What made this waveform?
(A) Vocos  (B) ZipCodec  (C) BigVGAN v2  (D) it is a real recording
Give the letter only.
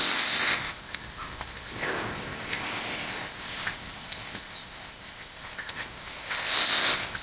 B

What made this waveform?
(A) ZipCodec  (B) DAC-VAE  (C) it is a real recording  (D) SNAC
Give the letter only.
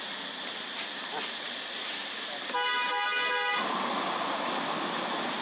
C